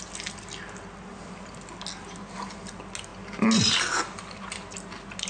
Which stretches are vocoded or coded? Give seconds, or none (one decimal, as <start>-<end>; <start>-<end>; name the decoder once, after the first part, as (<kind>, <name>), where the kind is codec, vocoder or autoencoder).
none